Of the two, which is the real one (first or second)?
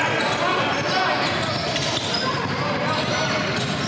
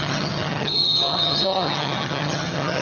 first